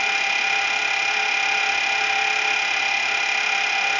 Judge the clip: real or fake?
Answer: real